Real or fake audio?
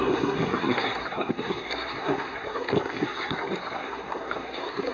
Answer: fake